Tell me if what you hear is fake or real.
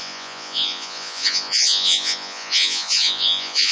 fake